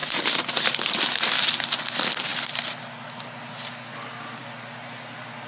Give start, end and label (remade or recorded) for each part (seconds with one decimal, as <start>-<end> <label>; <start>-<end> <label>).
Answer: 0.0-5.5 recorded